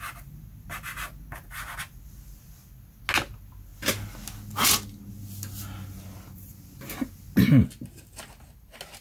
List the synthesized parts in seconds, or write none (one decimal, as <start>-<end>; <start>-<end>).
none